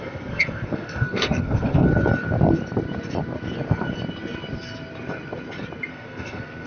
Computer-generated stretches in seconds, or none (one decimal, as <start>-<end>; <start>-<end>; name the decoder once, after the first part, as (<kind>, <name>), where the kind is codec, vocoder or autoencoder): 0.0-1.9 (codec, SNAC); 5.9-6.7